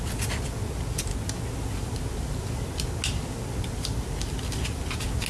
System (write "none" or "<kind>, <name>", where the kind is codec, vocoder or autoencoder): none